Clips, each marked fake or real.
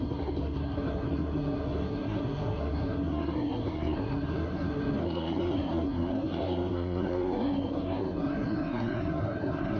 fake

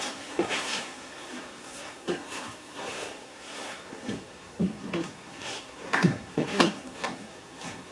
fake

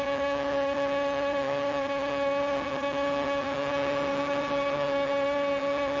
fake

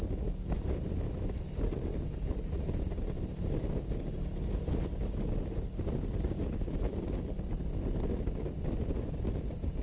real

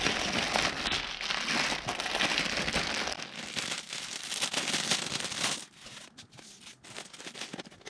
real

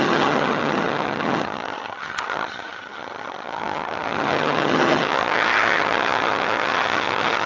fake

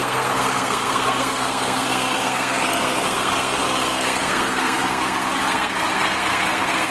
fake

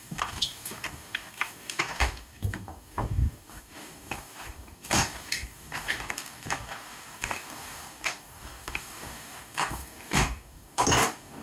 fake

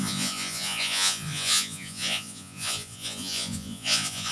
fake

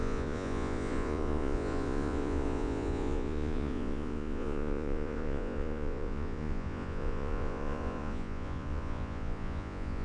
fake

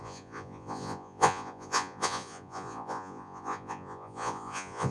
fake